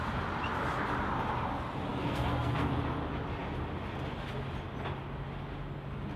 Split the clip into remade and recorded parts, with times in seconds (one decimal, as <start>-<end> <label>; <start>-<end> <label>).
0.0-1.9 recorded; 1.9-2.7 remade; 2.7-6.2 recorded